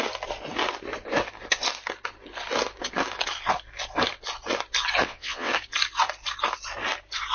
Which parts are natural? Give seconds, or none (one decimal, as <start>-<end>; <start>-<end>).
0.0-5.0; 5.5-7.3